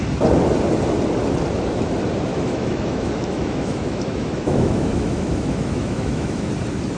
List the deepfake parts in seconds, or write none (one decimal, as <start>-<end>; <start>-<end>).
2.3-6.5